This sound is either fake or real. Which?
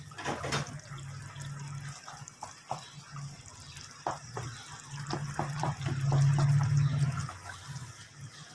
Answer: real